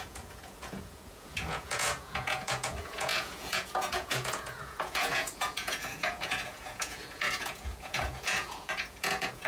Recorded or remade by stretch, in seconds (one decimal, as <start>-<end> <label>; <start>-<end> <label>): 0.0-9.5 remade